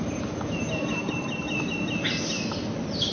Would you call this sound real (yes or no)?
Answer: yes